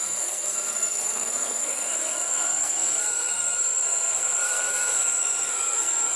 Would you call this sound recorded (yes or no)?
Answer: no